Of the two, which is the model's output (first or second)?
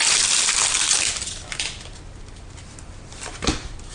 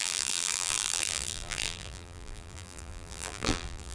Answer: second